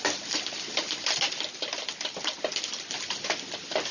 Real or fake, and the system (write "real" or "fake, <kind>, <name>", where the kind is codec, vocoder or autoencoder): real